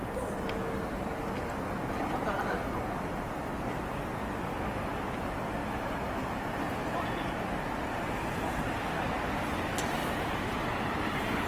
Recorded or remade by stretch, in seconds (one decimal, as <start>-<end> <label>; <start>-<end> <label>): 0.0-5.6 recorded; 5.6-8.8 remade; 8.8-11.5 recorded